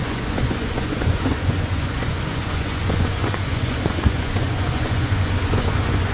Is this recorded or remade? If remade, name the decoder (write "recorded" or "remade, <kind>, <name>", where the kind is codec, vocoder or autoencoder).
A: remade, vocoder, Vocos